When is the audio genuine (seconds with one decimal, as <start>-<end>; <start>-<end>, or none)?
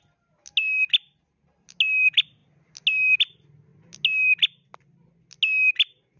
0.0-6.2